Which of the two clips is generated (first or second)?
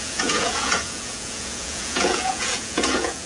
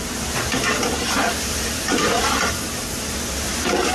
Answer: first